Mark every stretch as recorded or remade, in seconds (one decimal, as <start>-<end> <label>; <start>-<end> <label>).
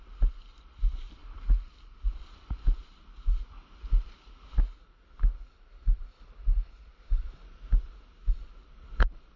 0.0-9.4 recorded